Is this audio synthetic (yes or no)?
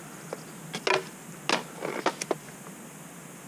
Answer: no